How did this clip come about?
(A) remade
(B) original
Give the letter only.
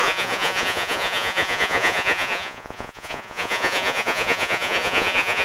A